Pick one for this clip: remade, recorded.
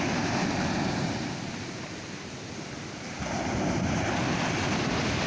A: recorded